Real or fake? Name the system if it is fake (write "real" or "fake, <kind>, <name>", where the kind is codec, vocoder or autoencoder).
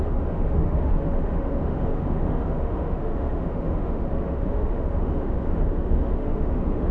fake, autoencoder, DAC-VAE